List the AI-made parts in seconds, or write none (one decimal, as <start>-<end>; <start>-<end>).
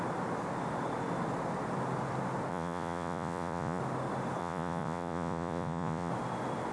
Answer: 2.5-3.8; 4.4-6.1